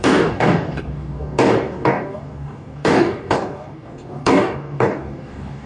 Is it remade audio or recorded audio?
remade